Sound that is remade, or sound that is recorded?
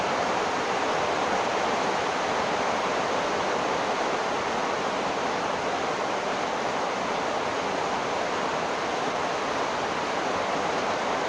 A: recorded